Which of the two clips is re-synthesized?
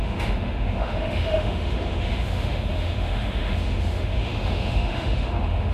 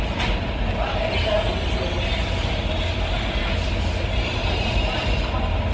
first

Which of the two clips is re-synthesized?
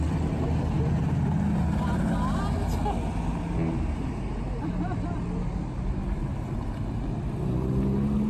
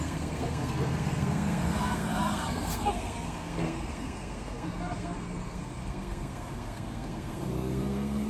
second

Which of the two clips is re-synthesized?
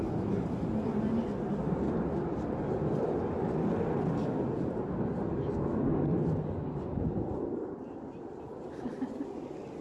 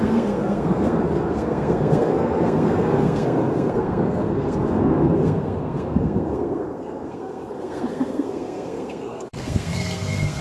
second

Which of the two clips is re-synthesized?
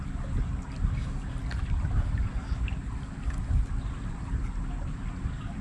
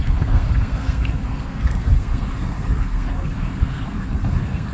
second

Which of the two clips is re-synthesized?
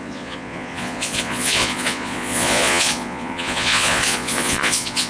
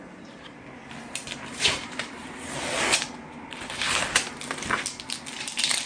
first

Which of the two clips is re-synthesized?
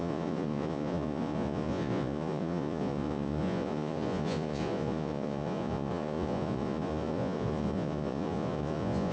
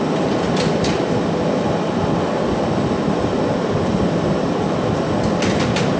first